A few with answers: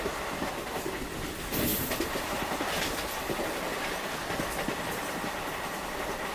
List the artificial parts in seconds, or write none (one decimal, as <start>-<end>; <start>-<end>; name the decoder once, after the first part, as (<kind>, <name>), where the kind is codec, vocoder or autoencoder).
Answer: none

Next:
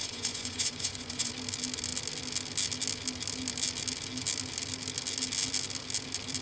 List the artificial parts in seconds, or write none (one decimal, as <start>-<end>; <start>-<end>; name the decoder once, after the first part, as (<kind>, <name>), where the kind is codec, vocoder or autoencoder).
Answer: 0.0-1.3 (vocoder, Vocos)

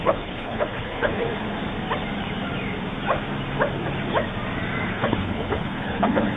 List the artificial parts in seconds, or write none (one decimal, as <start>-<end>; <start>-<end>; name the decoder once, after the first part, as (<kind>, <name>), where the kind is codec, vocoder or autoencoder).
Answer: 0.0-1.3 (codec, HILCodec); 4.9-6.4

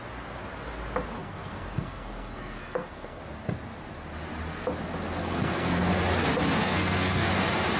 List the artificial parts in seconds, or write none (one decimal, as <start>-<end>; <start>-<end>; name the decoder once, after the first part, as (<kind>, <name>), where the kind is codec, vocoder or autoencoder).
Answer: 1.2-3.2 (codec, SNAC); 5.2-5.8; 6.6-7.3

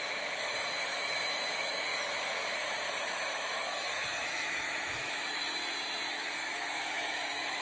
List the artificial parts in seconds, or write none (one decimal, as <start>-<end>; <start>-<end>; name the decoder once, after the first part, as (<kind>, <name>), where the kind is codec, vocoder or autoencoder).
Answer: 0.0-5.6 (autoencoder, DAC-VAE); 6.1-7.6

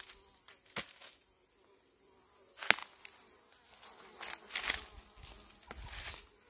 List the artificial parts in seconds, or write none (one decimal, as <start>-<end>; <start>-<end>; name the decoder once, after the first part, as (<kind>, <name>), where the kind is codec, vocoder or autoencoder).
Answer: none

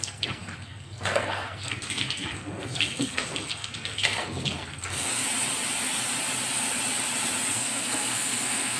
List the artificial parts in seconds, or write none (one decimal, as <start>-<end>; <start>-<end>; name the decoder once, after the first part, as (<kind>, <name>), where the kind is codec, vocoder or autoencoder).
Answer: 0.0-5.2 (codec, SNAC); 7.5-8.8